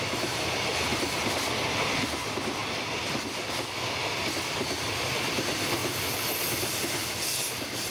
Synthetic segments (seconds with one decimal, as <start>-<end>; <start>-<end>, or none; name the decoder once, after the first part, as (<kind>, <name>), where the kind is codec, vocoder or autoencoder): 0.9-1.5 (vocoder, BigVGAN v2)

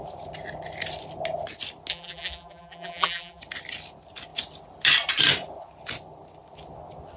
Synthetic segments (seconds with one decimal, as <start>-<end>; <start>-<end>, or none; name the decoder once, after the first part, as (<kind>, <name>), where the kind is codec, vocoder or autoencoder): 1.9-3.4 (vocoder, BigVGAN v2)

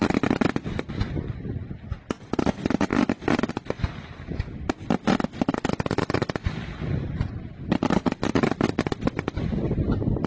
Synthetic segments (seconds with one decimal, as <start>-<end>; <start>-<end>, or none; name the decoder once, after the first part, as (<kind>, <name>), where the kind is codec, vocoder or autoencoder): none

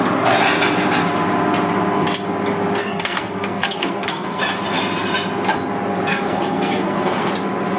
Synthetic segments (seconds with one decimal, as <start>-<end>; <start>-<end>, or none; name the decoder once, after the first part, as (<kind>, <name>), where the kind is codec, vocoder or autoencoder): 2.8-4.4 (codec, SNAC); 6.1-7.3

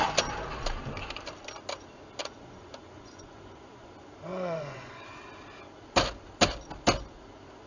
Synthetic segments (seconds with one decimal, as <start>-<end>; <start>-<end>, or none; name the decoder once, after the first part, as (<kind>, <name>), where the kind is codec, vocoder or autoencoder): 2.2-3.9 (vocoder, Vocos); 4.3-5.2

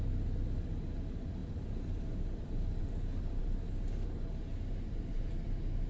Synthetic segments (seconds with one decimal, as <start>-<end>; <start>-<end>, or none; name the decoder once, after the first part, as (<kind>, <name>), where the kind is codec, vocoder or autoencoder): none